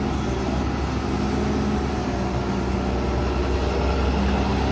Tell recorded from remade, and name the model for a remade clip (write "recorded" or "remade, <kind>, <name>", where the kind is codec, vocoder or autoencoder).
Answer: recorded